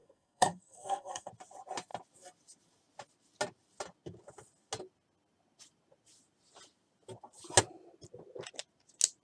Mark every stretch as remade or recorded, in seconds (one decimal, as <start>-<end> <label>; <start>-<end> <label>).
0.0-1.3 remade; 1.3-9.2 recorded